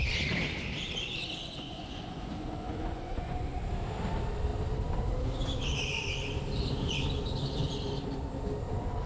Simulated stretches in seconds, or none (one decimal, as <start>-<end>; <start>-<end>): 1.4-3.6